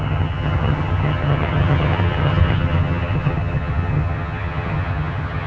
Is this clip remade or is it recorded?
remade